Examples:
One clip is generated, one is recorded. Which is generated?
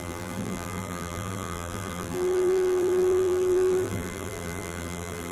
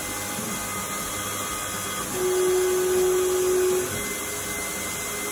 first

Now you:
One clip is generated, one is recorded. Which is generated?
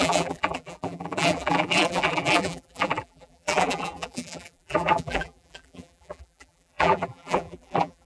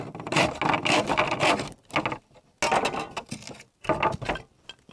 first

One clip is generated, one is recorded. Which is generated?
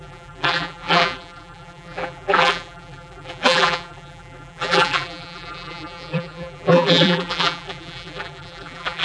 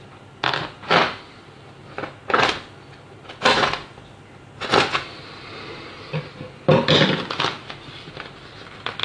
first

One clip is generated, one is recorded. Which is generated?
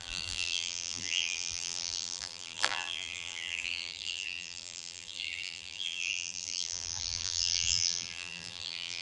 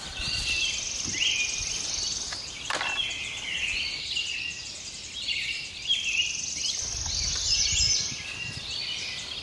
first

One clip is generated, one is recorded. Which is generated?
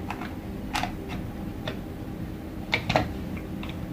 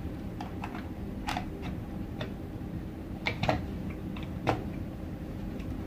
second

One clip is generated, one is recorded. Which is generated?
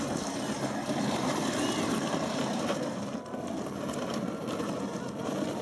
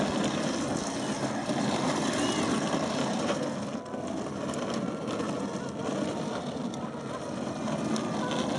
first